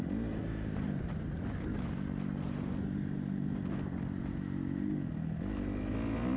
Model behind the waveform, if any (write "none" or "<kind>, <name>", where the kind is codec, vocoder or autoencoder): none